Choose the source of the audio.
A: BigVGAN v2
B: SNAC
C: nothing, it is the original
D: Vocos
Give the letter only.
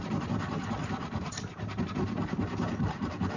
C